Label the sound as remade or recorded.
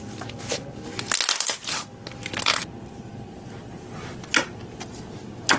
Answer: recorded